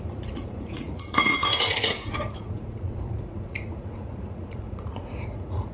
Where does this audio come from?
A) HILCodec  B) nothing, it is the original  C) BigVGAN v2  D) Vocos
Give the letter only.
D